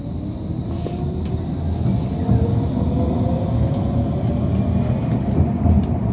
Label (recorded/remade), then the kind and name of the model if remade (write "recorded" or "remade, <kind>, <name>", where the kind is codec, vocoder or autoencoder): recorded